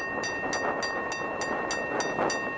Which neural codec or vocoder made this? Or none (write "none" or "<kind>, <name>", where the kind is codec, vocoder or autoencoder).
none